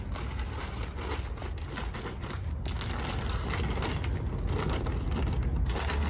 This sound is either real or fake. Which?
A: real